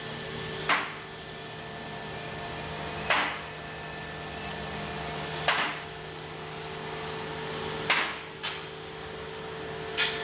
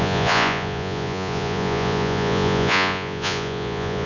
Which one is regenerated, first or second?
second